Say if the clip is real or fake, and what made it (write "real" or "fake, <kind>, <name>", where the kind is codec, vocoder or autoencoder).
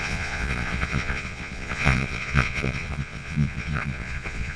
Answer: fake, vocoder, Vocos